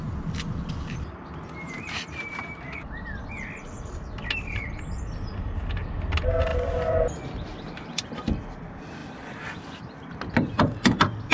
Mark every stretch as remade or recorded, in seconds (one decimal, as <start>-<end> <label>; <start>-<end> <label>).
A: 0.0-9.0 recorded; 9.0-9.8 remade; 9.8-11.3 recorded